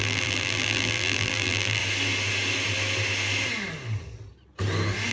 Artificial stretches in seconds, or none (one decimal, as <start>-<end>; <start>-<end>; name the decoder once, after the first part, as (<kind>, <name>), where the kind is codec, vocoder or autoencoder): 0.0-1.8 (vocoder, BigVGAN v2)